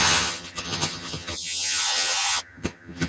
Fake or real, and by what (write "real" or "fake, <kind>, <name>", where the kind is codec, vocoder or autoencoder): fake, vocoder, HiFi-GAN